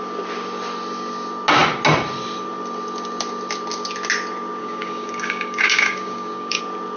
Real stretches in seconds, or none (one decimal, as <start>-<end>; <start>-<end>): 0.0-4.6; 6.6-7.0